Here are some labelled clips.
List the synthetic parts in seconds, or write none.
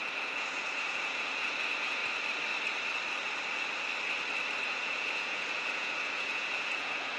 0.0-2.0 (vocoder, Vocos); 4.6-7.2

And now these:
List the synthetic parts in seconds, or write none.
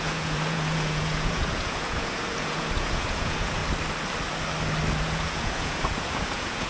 0.0-3.6 (vocoder, Vocos); 5.0-6.7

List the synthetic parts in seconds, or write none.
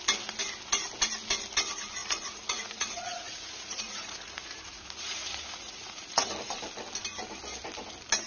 2.0-6.3 (vocoder, Vocos)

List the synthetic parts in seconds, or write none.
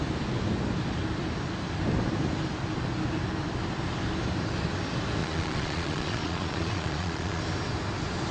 5.2-7.4 (vocoder, Vocos)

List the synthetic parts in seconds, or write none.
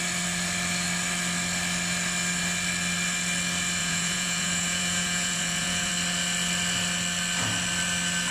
3.8-5.9 (vocoder, Vocos)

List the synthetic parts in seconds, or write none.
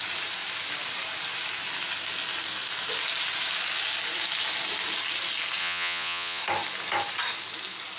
5.6-6.4 (vocoder, Vocos)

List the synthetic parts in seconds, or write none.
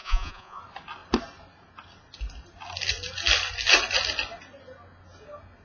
0.0-0.6 (vocoder, Vocos)